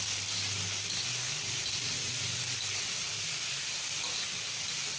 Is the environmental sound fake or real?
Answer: real